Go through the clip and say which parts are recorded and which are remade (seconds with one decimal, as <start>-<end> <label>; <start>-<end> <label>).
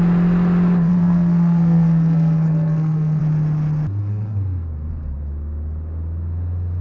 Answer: 0.0-0.9 recorded; 0.9-3.2 remade; 3.2-4.0 recorded; 4.0-4.9 remade; 4.9-6.8 recorded